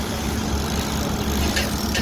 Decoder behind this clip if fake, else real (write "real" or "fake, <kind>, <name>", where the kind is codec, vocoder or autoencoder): real